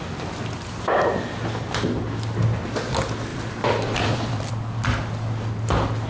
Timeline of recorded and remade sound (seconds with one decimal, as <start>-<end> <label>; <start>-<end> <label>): 0.0-3.3 recorded; 3.3-4.5 remade; 4.5-6.1 recorded